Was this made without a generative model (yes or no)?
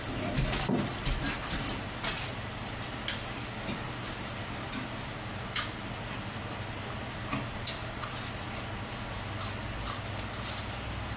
yes